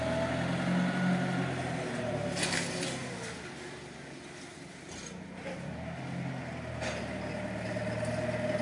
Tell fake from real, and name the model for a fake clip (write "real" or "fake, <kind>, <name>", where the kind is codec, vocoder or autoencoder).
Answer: real